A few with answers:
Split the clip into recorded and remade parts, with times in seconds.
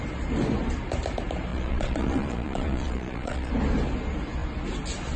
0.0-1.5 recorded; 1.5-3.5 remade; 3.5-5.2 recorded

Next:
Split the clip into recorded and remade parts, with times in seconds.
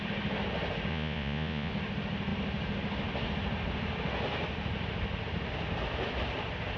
0.0-0.9 recorded; 0.9-1.7 remade; 1.7-6.8 recorded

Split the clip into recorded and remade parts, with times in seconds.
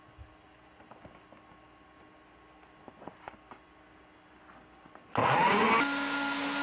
0.0-5.2 recorded; 5.2-5.7 remade; 5.7-6.6 recorded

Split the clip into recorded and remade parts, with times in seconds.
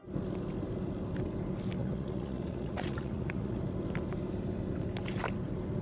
0.0-1.8 recorded; 1.8-3.6 remade; 3.6-5.8 recorded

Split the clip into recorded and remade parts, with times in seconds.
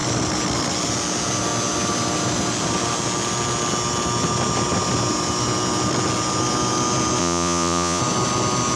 0.0-7.2 recorded; 7.2-8.0 remade; 8.0-8.8 recorded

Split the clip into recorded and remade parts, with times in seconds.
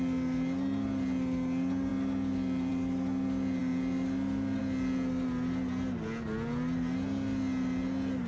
0.0-8.3 recorded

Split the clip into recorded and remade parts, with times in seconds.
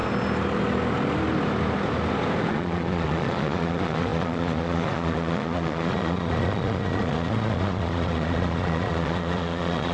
0.0-2.5 recorded; 2.5-9.9 remade